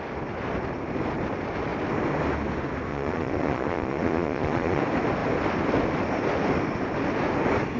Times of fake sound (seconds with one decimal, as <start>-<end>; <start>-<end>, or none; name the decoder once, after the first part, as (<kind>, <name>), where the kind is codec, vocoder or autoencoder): 2.9-4.8 (vocoder, Vocos)

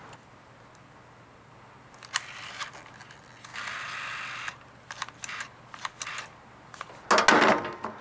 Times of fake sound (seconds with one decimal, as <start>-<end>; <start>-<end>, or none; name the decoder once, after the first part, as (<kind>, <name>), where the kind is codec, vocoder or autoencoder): none

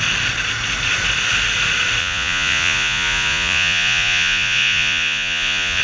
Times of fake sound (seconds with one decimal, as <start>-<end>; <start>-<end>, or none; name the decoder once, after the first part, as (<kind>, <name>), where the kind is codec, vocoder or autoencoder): 2.0-5.8 (vocoder, Vocos)

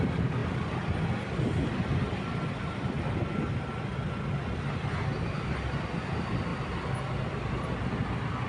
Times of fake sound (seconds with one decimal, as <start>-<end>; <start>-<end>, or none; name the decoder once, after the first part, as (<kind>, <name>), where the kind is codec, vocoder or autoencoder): 6.5-7.4 (vocoder, BigVGAN v2)

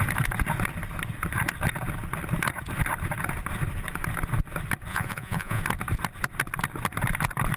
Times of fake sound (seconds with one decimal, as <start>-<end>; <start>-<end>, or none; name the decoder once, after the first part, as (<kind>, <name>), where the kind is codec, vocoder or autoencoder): 4.9-5.6 (vocoder, Vocos)

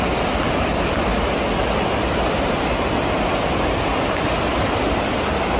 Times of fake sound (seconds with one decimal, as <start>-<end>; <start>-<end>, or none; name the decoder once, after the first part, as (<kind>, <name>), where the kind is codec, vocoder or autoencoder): 0.0-1.1 (vocoder, BigVGAN v2); 4.5-5.6

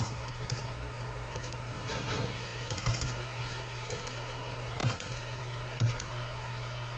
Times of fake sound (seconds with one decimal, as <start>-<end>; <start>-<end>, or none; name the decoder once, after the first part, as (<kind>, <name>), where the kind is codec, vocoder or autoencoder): 0.0-7.0 (codec, SNAC)

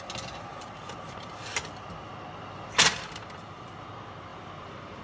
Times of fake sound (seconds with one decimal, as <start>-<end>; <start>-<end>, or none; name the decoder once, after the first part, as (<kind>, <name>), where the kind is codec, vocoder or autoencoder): 0.5-1.6 (vocoder, BigVGAN v2); 2.9-3.7; 4.3-5.0